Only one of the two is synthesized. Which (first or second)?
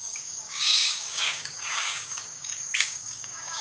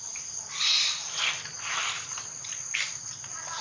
first